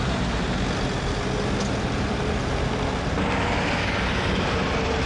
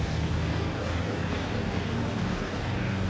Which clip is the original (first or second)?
first